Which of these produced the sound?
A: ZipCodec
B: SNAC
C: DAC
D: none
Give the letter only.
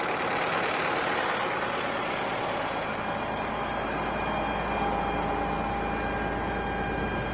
D